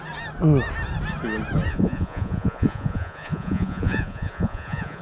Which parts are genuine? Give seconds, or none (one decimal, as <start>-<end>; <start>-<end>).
0.0-1.7